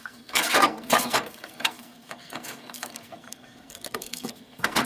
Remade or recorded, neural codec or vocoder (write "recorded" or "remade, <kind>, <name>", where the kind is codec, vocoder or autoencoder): remade, codec, SNAC